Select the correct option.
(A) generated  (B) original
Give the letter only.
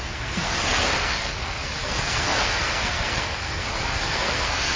A